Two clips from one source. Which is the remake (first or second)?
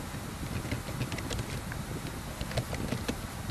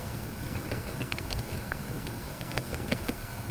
second